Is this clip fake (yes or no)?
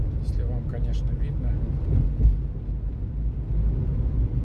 no